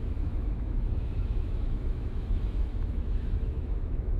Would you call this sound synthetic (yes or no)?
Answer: yes